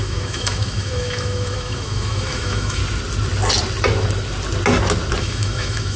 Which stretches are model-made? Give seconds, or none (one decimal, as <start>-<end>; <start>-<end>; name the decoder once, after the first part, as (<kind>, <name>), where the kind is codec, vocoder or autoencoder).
0.0-2.8 (autoencoder, DAC-VAE); 5.2-6.0